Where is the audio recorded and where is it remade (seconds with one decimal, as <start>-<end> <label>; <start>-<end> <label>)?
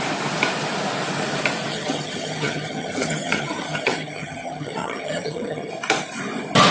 0.0-1.7 recorded; 1.7-5.7 remade; 5.7-6.7 recorded